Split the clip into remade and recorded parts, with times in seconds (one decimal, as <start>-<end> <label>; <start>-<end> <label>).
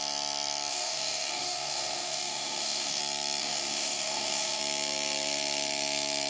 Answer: 0.0-0.7 recorded; 0.7-3.0 remade; 3.0-3.4 recorded; 3.4-4.6 remade; 4.6-6.3 recorded